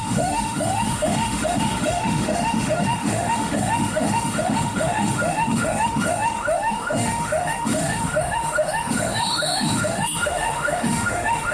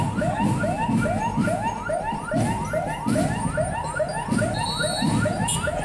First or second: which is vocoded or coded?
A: first